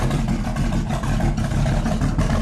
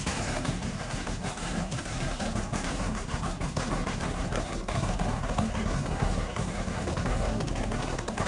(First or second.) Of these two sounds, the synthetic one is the second